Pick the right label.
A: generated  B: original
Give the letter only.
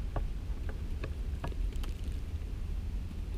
B